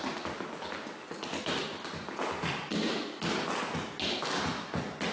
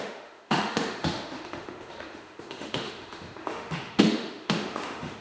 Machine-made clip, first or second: second